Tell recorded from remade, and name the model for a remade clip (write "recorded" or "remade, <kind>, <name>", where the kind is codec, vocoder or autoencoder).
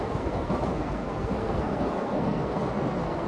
remade, codec, SNAC